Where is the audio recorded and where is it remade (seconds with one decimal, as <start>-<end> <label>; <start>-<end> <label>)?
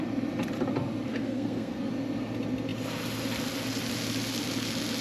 0.0-1.1 recorded; 1.1-1.9 remade; 1.9-5.0 recorded